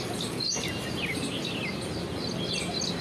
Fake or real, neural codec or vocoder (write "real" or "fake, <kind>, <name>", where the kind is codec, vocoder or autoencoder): real